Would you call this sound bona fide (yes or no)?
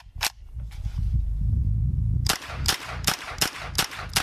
yes